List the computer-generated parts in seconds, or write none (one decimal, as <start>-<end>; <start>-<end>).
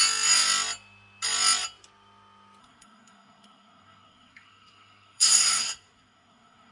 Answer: 2.6-6.7